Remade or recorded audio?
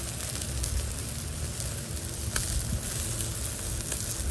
recorded